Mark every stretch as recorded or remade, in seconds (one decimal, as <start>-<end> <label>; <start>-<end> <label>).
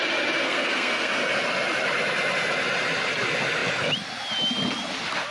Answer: 0.0-0.4 recorded; 0.4-1.1 remade; 1.1-5.3 recorded